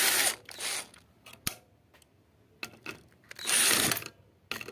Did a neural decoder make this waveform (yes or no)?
no